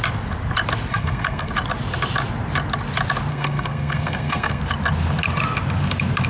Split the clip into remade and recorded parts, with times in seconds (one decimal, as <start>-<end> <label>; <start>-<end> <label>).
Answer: 0.0-0.9 recorded; 0.9-1.5 remade; 1.5-3.3 recorded; 3.3-4.6 remade; 4.6-6.3 recorded